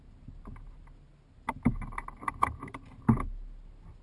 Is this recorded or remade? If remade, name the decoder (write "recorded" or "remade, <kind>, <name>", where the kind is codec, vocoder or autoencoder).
recorded